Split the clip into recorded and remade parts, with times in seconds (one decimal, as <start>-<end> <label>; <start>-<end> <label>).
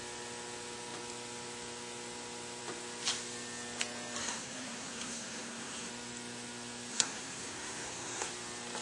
0.0-4.2 recorded; 4.2-5.9 remade; 5.9-6.9 recorded; 6.9-8.3 remade; 8.3-8.8 recorded